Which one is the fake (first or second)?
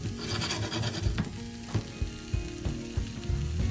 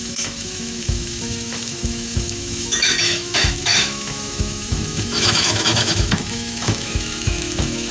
second